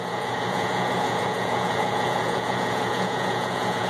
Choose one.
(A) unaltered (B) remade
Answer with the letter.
B